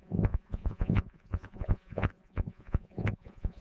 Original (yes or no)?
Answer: no